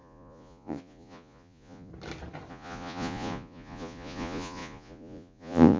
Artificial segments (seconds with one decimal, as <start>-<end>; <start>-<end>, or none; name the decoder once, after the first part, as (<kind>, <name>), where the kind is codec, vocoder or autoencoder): 0.0-1.9 (vocoder, Vocos); 2.5-5.8